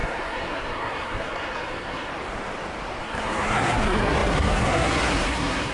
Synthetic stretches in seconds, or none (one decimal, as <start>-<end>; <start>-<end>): 0.0-2.1; 3.0-5.7